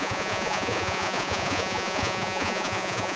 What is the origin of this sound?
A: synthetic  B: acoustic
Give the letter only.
A